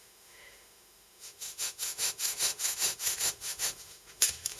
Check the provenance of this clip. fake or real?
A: fake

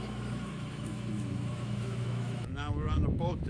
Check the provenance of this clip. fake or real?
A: fake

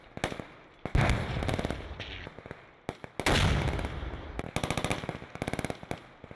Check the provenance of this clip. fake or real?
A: real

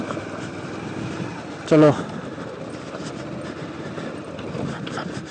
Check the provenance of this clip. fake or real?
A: real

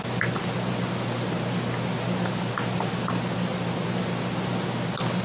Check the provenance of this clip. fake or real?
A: real